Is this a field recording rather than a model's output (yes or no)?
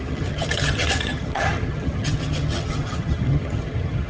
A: no